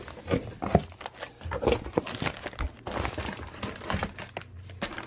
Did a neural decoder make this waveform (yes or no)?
no